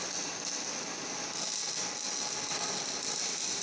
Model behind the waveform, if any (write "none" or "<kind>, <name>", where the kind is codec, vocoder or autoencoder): none